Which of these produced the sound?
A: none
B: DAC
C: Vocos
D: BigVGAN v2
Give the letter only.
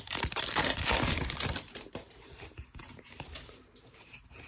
D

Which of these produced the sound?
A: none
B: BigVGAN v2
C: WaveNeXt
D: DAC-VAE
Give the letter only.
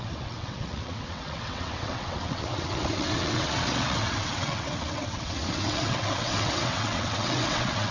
C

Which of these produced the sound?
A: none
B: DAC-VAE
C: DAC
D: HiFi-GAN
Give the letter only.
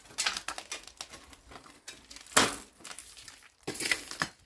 A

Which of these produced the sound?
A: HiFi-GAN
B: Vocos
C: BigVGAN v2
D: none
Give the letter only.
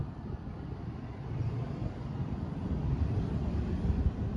D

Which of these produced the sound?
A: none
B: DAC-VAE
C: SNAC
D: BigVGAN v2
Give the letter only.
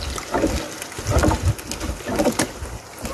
A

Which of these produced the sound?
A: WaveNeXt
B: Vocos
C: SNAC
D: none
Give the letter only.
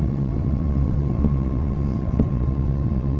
A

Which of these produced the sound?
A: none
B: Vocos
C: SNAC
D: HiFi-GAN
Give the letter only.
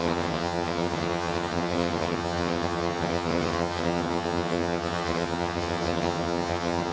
D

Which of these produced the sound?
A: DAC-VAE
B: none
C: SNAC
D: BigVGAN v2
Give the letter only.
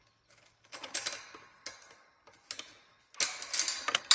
B